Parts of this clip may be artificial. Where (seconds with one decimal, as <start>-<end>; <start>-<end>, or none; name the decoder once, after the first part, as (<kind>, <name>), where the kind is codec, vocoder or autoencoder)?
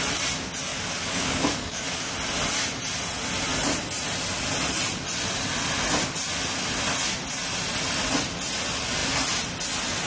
0.7-2.1 (codec, DAC)